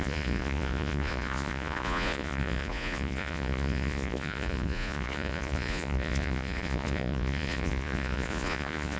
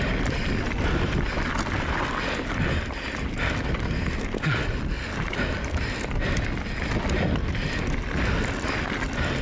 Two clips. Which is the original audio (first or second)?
second